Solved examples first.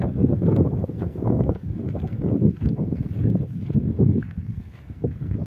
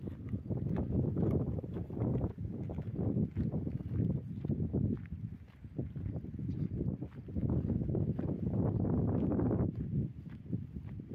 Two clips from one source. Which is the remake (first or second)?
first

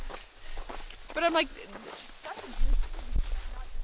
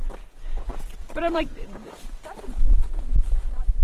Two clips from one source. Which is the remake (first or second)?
second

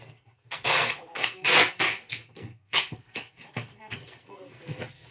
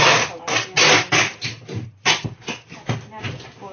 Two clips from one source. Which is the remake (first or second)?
first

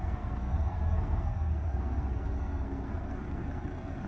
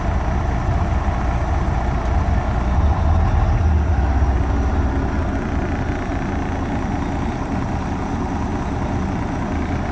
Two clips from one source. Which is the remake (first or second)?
first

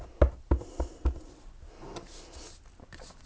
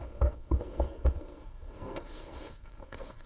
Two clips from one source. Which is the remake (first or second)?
second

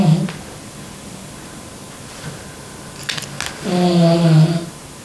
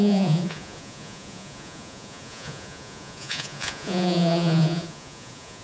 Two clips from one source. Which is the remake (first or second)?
second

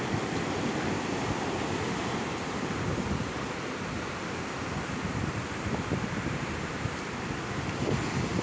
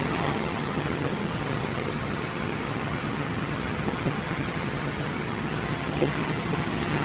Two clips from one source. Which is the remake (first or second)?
second